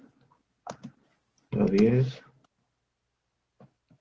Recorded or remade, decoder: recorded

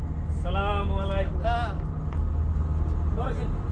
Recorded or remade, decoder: recorded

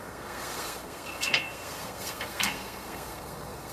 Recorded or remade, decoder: remade, codec, SNAC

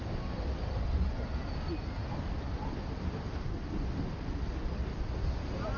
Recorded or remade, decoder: recorded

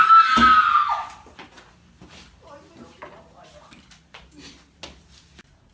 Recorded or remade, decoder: recorded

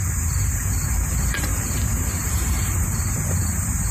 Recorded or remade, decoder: remade, vocoder, BigVGAN v2